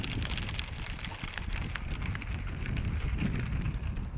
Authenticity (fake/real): real